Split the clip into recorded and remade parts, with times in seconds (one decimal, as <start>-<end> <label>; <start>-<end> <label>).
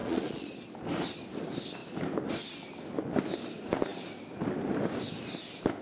0.0-0.7 remade; 0.7-5.8 recorded